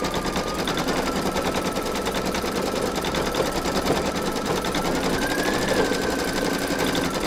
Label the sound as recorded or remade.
recorded